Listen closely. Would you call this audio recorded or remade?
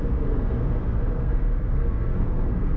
remade